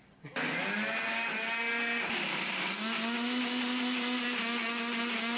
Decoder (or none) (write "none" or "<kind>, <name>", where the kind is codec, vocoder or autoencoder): none